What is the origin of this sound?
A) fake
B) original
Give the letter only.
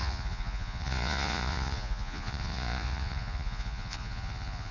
A